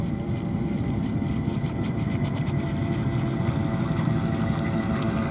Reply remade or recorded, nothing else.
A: recorded